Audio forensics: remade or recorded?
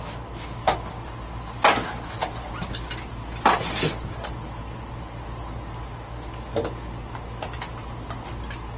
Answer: recorded